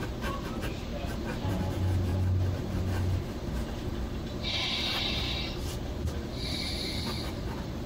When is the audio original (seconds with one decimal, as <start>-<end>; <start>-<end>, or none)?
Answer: 0.0-7.9